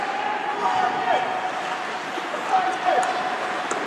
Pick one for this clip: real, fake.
real